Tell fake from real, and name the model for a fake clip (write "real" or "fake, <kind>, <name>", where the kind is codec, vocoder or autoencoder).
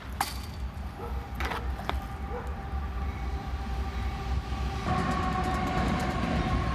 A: real